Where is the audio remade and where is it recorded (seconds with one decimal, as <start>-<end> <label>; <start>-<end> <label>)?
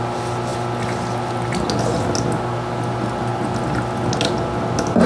0.0-5.1 recorded